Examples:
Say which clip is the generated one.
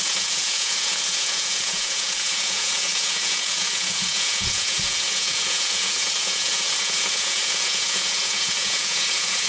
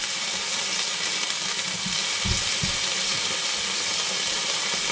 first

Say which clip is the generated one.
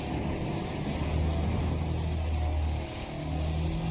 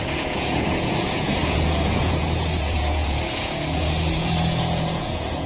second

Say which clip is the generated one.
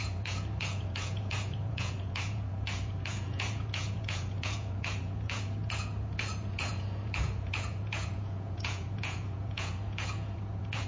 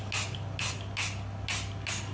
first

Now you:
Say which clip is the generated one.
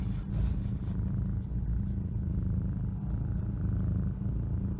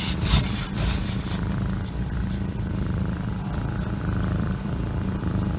second